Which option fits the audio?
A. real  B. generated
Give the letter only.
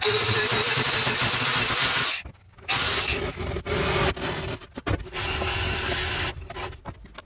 A